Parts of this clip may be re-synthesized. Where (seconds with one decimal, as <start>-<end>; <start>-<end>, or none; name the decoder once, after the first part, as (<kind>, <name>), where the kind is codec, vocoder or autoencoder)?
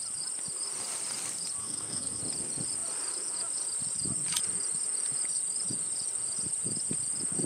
1.6-2.2 (codec, SNAC)